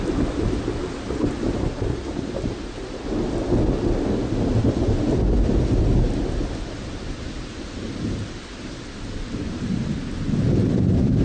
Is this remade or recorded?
recorded